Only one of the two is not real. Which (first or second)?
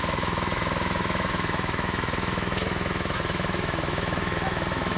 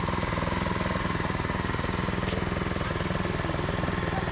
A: first